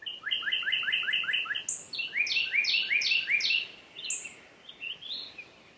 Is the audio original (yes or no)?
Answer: yes